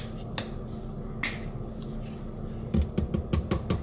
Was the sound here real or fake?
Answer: real